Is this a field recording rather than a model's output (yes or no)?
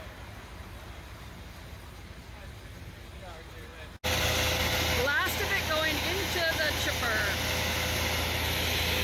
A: yes